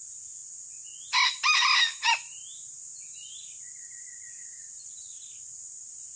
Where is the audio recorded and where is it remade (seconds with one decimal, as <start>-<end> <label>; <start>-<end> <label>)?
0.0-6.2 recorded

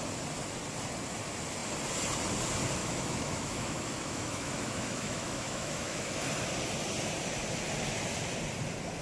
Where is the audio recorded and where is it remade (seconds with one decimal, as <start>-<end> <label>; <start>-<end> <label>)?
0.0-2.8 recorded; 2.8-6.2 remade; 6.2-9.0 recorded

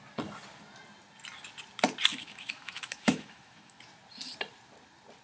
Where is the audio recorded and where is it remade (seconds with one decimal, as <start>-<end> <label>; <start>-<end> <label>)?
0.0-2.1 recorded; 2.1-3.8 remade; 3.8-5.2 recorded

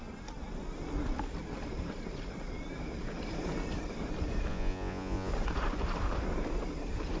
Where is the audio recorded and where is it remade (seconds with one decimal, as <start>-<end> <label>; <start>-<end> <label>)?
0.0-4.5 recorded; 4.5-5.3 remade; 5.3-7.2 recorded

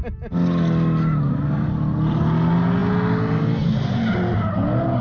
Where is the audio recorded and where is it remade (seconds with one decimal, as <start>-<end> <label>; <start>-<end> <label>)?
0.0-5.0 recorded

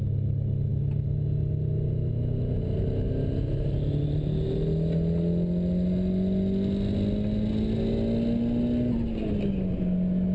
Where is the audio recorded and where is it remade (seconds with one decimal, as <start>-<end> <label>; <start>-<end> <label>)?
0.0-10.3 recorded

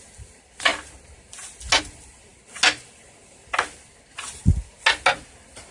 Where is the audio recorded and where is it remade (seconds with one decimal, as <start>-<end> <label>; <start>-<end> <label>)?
0.0-5.7 recorded

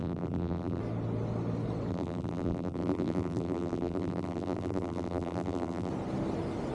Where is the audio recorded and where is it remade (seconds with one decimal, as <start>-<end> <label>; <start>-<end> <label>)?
0.0-0.8 remade; 0.8-1.9 recorded; 1.9-5.9 remade; 5.9-6.7 recorded